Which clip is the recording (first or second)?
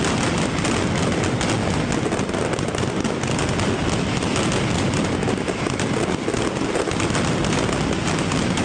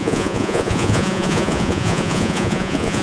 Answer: first